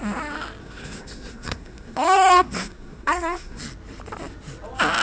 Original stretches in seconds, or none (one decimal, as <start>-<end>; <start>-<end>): 0.0-0.6; 3.6-5.0